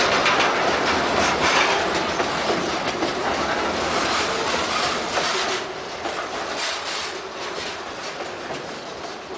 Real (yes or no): yes